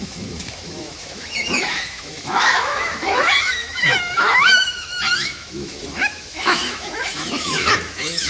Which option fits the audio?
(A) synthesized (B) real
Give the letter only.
A